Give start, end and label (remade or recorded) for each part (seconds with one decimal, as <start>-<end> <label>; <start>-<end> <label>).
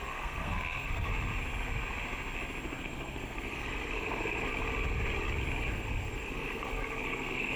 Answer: 0.0-1.1 remade; 1.1-2.8 recorded; 2.8-4.5 remade; 4.5-5.7 recorded; 5.7-7.6 remade